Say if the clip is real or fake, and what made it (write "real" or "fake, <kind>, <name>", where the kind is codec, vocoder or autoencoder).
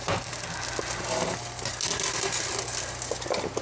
real